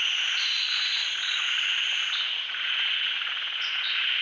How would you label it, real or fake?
fake